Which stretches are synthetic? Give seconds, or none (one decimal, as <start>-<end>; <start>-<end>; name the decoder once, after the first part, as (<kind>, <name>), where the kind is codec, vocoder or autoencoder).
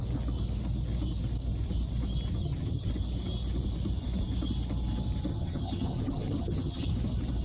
2.4-2.9 (vocoder, HiFi-GAN); 5.3-6.9